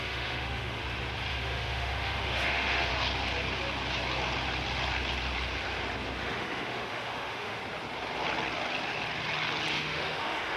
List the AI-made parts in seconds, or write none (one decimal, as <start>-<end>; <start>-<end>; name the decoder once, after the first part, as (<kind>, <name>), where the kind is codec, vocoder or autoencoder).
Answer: 0.0-0.8 (autoencoder, DAC-VAE); 1.3-2.9; 6.2-7.6; 9.7-10.6